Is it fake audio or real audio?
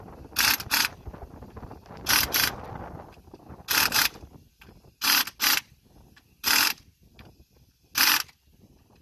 real